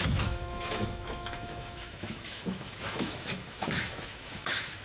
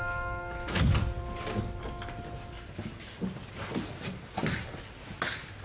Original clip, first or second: second